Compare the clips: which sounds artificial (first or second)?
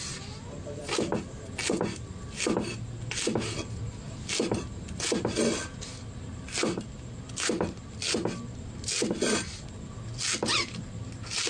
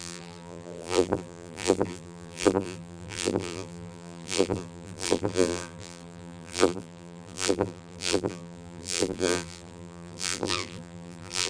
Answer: second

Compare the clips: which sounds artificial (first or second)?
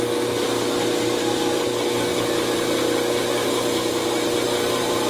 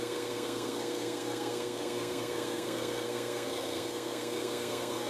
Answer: second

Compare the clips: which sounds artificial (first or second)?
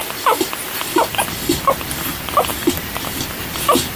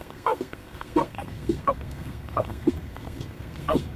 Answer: second